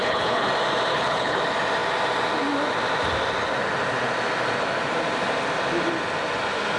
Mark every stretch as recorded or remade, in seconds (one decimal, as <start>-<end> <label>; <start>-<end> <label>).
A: 0.0-0.5 remade; 0.5-0.9 recorded; 0.9-1.4 remade; 1.4-6.8 recorded